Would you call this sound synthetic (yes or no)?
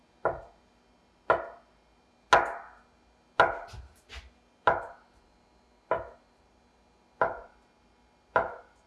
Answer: no